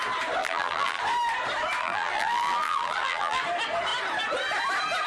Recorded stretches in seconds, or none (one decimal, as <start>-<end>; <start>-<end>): 0.0-0.4; 1.0-1.8; 3.4-5.1